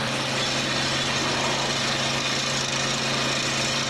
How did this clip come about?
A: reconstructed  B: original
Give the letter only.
B